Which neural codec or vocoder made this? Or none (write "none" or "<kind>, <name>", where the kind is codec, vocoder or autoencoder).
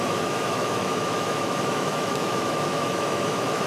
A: autoencoder, DAC-VAE